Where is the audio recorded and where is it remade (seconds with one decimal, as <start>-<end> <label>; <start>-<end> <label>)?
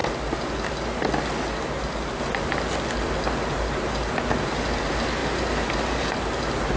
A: 0.0-6.8 recorded